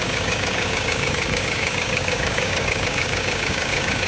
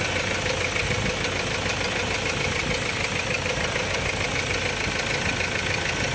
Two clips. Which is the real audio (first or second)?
second